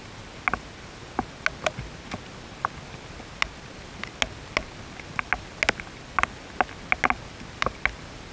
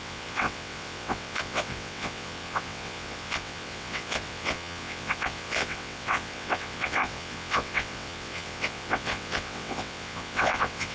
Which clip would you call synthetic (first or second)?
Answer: second